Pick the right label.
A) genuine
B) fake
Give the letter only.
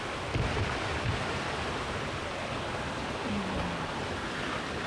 A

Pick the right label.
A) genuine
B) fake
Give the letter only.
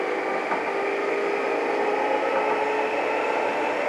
A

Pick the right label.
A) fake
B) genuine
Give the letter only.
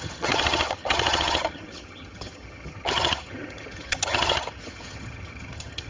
A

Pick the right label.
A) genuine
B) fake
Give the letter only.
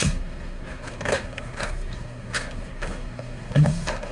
B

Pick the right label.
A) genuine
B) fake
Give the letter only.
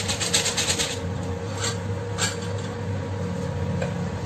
A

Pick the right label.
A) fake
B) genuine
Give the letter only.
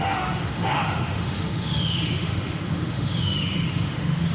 A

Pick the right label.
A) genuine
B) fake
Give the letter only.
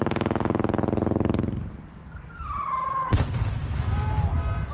A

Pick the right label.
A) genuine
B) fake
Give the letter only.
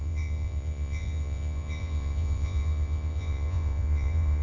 B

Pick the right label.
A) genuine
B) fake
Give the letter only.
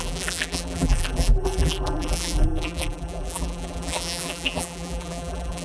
B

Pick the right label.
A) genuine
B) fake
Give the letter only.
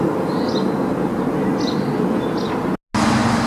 A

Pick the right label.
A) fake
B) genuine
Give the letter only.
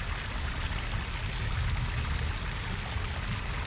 B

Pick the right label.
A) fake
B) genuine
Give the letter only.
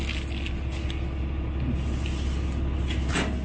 B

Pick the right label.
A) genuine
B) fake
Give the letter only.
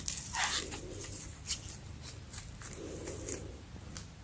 A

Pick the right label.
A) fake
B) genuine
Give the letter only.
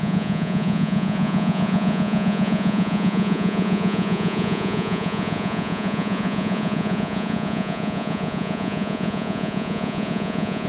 A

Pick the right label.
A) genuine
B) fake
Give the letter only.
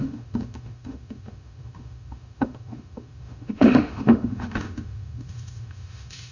B